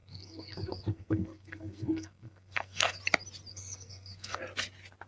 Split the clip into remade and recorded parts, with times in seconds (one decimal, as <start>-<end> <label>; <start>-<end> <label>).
0.0-3.0 remade; 3.0-3.5 recorded; 3.5-4.4 remade; 4.4-5.1 recorded